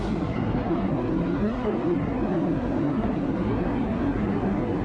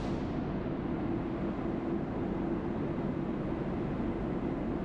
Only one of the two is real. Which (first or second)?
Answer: second